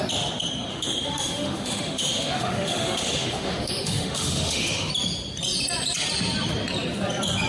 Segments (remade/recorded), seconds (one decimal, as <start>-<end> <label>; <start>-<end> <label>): 0.0-0.7 recorded; 0.7-4.9 remade; 4.9-7.5 recorded